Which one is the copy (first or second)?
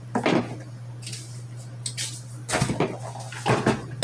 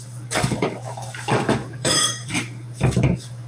second